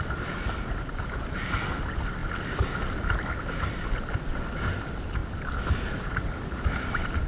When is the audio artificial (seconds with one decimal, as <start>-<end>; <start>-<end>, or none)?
none